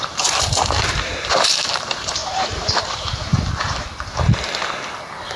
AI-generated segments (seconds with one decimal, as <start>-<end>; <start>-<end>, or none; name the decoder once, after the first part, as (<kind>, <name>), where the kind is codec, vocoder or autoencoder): 0.0-3.3 (vocoder, BigVGAN v2)